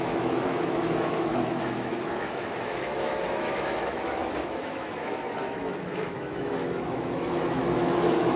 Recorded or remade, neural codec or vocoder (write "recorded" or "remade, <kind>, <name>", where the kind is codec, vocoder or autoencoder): remade, autoencoder, DAC-VAE